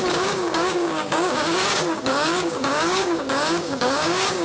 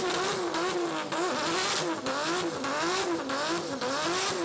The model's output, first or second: first